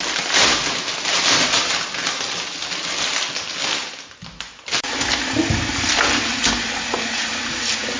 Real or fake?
real